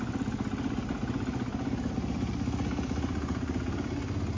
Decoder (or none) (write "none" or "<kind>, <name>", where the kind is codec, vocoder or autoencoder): none